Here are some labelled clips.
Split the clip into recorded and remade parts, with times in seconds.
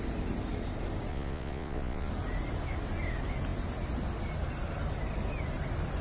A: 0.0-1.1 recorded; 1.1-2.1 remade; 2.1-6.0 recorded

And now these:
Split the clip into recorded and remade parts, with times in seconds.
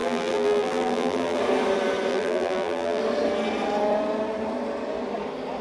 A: 0.0-1.4 remade; 1.4-2.1 recorded; 2.1-3.0 remade; 3.0-5.6 recorded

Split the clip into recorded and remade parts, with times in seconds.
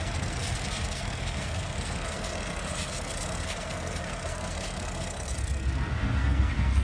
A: 0.0-6.8 remade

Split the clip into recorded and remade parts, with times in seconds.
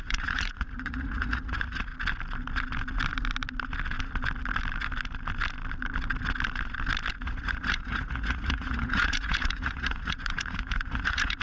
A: 0.0-1.9 remade; 1.9-7.1 recorded; 7.1-11.4 remade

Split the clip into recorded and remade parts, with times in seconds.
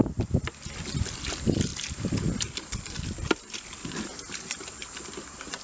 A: 0.0-5.6 recorded